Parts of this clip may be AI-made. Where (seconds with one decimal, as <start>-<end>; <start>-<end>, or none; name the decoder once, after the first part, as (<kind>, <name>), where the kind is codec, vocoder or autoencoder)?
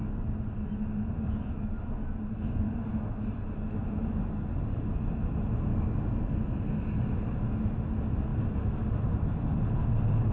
none